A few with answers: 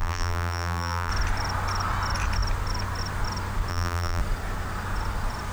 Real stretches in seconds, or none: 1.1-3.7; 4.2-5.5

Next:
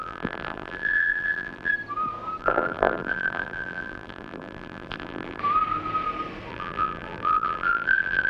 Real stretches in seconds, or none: 1.7-2.4; 5.4-6.5

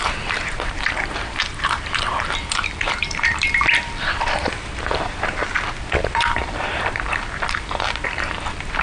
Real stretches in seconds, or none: 5.4-6.0

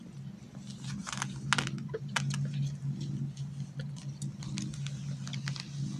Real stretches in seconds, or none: 0.0-6.0

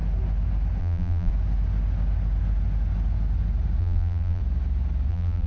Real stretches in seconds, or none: 0.0-0.8; 1.3-3.8; 4.4-5.1